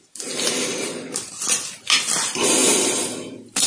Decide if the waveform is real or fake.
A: real